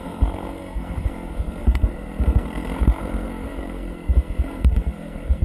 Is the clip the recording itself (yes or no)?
no